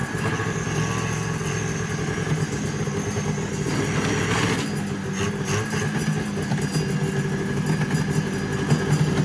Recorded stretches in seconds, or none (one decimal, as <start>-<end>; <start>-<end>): 0.0-9.2